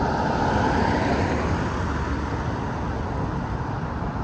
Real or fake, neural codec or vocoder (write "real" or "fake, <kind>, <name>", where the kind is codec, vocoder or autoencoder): real